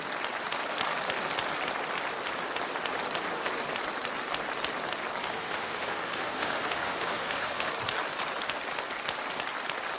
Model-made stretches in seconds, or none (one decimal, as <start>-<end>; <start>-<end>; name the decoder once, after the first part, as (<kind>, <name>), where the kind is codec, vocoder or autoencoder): 5.2-7.7 (autoencoder, DAC-VAE)